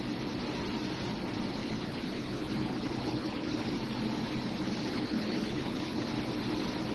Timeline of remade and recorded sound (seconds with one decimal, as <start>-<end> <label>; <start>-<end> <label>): 0.0-1.6 recorded; 1.6-3.7 remade; 3.7-4.8 recorded; 4.8-6.0 remade; 6.0-6.9 recorded